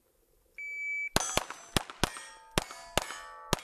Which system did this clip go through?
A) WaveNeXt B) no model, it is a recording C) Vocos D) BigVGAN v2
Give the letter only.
B